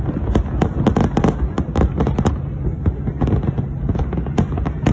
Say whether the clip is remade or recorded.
recorded